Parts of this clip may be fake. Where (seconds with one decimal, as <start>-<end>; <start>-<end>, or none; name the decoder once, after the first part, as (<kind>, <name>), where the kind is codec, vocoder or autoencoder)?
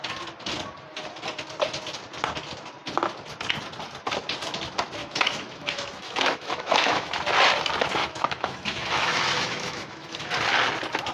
5.0-7.1 (autoencoder, DAC-VAE); 8.0-10.3